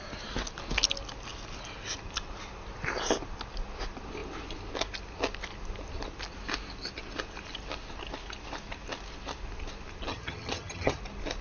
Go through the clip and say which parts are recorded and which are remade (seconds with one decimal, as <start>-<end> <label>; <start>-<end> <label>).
0.0-10.1 recorded; 10.1-11.0 remade; 11.0-11.4 recorded